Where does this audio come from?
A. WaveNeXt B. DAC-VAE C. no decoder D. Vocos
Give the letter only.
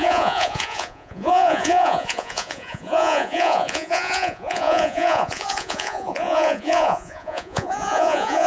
D